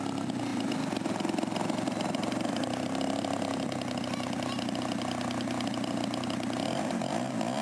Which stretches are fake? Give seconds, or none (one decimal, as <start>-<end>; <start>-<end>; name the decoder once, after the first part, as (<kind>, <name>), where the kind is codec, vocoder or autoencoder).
none